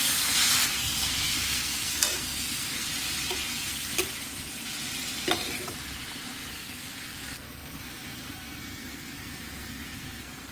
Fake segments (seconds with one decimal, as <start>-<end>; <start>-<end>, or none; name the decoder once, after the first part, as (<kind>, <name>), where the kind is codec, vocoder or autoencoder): 0.0-2.9 (codec, SNAC); 3.5-3.9; 6.5-10.5